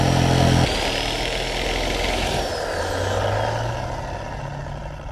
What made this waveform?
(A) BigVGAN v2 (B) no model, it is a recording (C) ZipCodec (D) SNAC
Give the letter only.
B